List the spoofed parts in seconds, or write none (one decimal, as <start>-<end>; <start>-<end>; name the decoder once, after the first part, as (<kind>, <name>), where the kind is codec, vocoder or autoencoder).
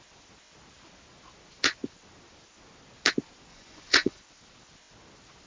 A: 3.5-4.2 (vocoder, Vocos)